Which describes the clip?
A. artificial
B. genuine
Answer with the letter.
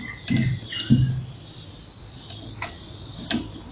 B